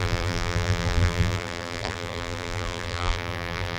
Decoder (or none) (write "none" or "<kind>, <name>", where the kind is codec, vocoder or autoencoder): vocoder, BigVGAN v2